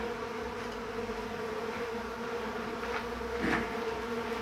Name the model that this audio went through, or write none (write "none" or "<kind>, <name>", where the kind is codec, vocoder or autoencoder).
none